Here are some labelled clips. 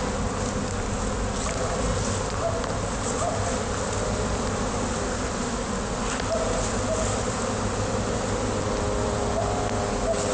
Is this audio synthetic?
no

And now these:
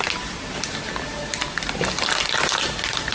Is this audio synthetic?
no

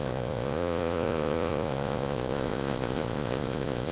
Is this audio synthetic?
yes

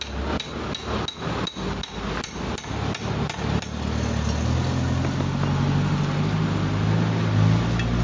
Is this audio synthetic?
no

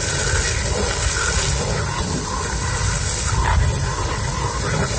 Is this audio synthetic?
no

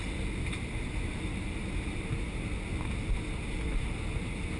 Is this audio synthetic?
no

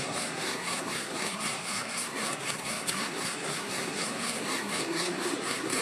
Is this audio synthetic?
yes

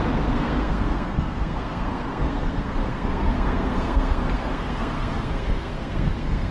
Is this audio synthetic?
yes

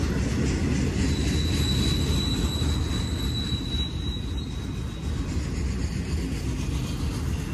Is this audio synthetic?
no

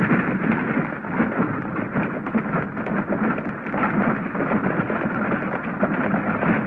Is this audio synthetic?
no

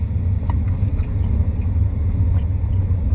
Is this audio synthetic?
no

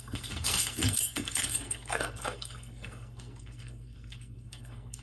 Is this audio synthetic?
yes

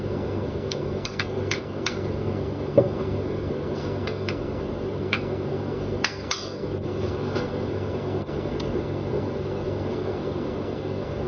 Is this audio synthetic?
yes